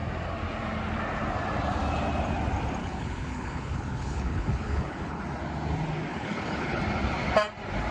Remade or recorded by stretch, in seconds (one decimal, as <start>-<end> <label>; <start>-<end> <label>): 0.0-2.8 recorded; 2.8-5.2 remade; 5.2-6.1 recorded; 6.1-6.8 remade; 6.8-7.9 recorded